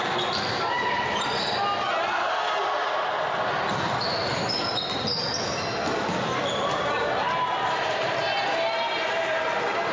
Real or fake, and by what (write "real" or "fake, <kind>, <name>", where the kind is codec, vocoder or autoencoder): real